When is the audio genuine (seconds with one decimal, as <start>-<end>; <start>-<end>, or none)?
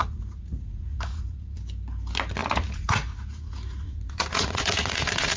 1.6-2.4